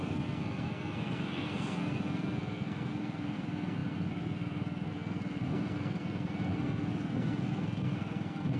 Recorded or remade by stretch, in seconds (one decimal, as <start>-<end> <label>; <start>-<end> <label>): 0.0-8.6 remade